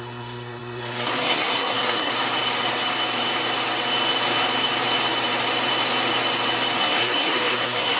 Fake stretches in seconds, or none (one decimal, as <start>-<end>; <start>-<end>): 0.0-2.1; 6.8-8.0